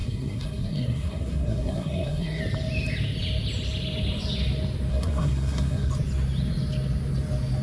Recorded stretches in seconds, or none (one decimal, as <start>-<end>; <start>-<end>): 2.4-4.9; 5.9-7.6